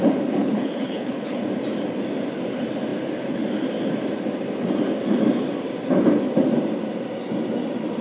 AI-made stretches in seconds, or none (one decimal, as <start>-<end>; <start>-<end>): 0.4-1.4